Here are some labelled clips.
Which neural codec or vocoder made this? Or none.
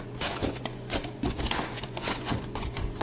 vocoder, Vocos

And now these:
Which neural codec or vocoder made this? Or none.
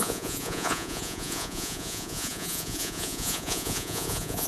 vocoder, Vocos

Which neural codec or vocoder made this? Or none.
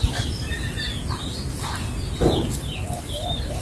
none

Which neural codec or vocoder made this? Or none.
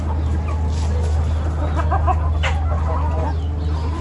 none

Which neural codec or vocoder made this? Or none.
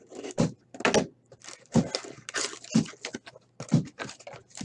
none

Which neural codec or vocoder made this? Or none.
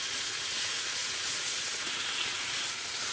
vocoder, Vocos